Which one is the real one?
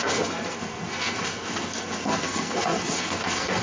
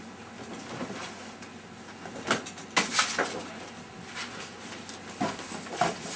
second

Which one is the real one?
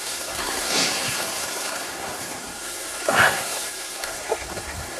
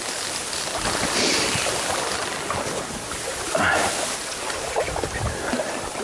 second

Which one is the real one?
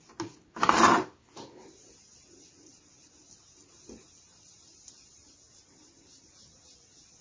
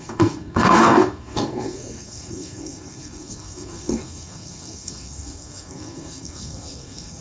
first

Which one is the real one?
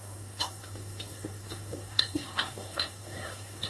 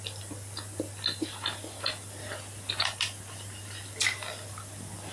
second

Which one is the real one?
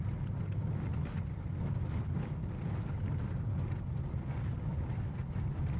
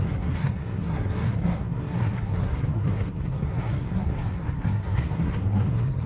first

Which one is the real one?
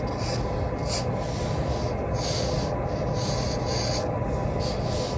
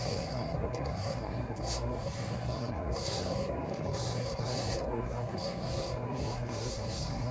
first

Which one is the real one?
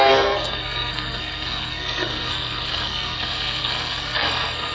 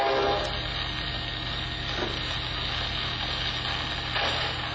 second